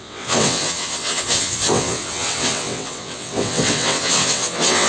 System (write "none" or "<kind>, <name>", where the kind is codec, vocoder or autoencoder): vocoder, WaveNeXt